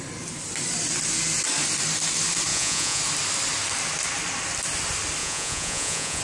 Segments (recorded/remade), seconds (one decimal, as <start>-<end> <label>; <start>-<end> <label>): 0.0-2.5 recorded; 2.5-3.0 remade; 3.0-5.2 recorded; 5.2-6.2 remade